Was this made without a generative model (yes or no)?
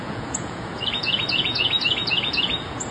no